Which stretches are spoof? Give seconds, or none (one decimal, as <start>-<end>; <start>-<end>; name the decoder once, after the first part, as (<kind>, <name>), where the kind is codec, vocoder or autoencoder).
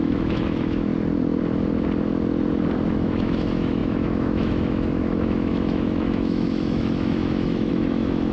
0.0-0.9 (autoencoder, DAC-VAE); 2.9-8.3